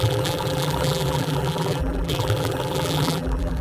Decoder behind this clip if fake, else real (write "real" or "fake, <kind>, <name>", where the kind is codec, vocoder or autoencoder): fake, vocoder, BigVGAN v2